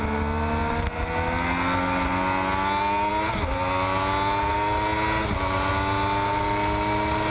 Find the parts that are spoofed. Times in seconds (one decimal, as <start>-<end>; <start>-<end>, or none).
none